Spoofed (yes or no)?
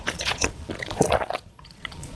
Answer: yes